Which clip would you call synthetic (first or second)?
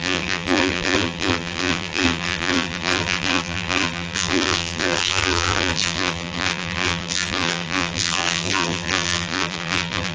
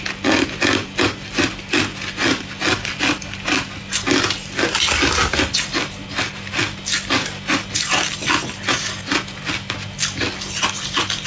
first